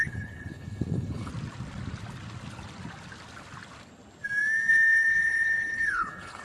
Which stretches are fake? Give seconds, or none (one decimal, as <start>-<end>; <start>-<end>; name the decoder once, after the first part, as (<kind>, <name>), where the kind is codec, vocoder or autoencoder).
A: 0.0-1.3 (codec, HILCodec); 4.7-6.4